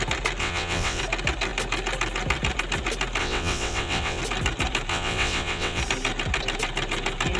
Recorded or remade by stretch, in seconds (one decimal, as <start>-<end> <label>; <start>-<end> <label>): 0.0-0.4 recorded; 0.4-1.0 remade; 1.0-3.2 recorded; 3.2-4.2 remade; 4.2-4.9 recorded; 4.9-5.8 remade; 5.8-7.4 recorded